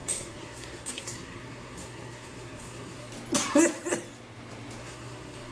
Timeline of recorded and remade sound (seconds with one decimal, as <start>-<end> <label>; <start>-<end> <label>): 0.0-3.1 remade; 3.1-4.8 recorded; 4.8-5.5 remade